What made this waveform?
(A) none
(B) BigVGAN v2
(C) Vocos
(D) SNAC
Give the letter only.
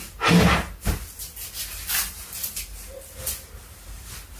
A